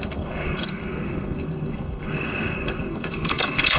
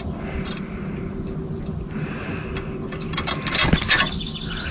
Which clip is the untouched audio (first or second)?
second